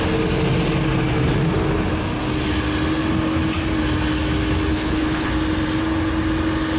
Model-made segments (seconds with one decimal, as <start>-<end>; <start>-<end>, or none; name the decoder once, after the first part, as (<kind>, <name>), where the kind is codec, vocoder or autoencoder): 4.7-5.3 (codec, HILCodec)